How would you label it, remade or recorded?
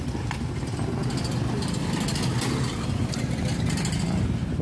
recorded